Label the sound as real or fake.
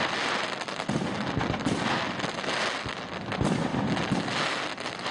real